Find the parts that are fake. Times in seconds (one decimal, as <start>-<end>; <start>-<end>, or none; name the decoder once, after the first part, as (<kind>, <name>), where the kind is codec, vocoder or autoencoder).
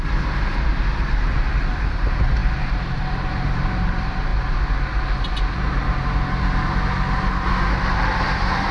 0.0-4.3 (vocoder, BigVGAN v2); 7.7-8.7